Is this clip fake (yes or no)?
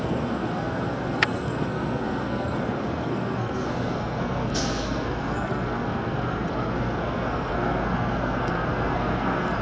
yes